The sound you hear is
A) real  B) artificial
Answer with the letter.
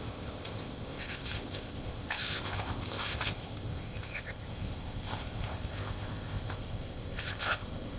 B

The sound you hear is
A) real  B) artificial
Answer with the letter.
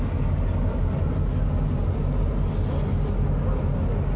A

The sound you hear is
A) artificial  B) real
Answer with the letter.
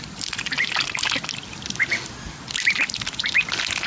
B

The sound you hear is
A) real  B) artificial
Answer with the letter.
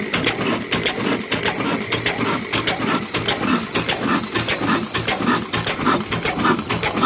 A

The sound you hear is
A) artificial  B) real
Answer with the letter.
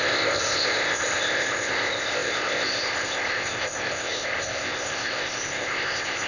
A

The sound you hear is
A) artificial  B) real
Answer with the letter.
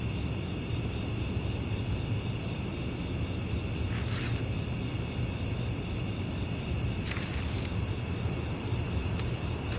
B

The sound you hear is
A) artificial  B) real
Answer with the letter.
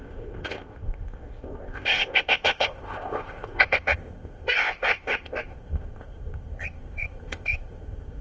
A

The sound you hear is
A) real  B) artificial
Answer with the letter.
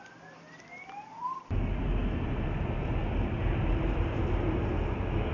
A